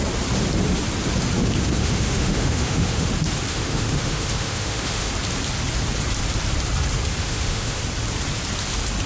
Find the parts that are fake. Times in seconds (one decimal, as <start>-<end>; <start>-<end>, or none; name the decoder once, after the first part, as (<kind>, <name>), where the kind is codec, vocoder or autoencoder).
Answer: 1.8-3.1 (autoencoder, DAC-VAE); 3.5-5.1; 7.2-7.8